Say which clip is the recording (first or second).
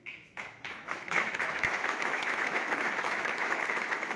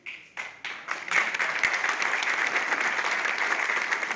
second